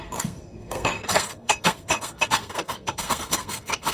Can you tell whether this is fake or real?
fake